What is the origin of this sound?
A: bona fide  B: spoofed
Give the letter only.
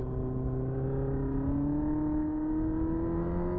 A